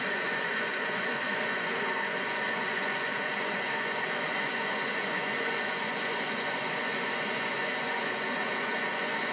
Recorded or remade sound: remade